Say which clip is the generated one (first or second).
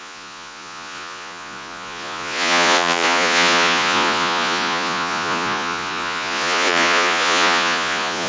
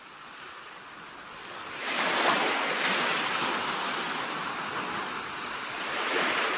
first